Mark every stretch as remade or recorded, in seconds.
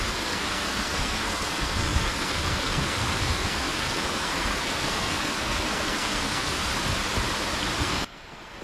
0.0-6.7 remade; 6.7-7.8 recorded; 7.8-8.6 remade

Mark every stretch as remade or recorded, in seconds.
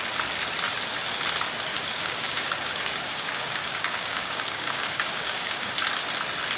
0.0-1.7 recorded; 1.7-5.7 remade; 5.7-6.6 recorded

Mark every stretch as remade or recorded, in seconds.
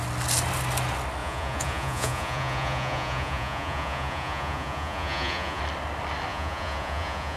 0.0-1.2 recorded; 1.2-5.6 remade; 5.6-6.3 recorded; 6.3-7.4 remade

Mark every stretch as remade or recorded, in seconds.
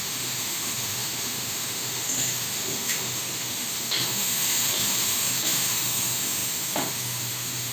0.0-7.7 remade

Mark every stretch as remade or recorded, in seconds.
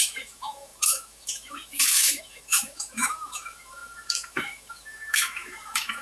0.0-6.0 remade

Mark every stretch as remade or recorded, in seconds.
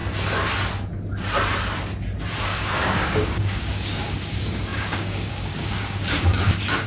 0.0-2.4 recorded; 2.4-6.9 remade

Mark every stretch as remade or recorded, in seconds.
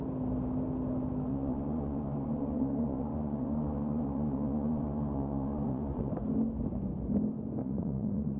0.0-1.3 recorded; 1.3-6.1 remade; 6.1-7.6 recorded; 7.6-8.4 remade